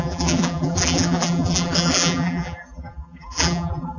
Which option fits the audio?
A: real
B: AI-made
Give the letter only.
B